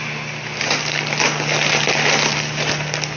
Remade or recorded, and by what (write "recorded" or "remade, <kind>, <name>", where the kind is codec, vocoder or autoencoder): recorded